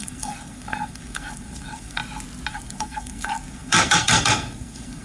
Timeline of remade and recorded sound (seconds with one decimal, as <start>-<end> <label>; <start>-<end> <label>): 0.0-2.0 remade; 2.0-2.5 recorded; 2.5-5.0 remade